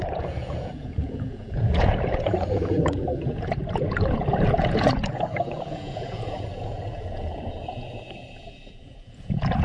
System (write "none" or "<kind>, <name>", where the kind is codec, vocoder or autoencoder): vocoder, Vocos